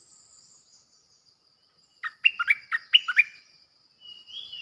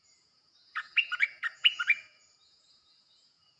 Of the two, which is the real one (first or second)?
first